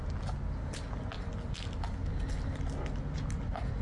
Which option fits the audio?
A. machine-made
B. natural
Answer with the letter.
B